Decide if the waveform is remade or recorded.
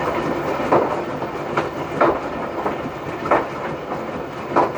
recorded